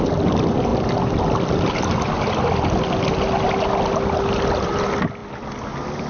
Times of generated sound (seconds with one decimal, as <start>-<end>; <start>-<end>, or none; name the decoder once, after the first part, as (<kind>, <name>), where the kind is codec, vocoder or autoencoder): none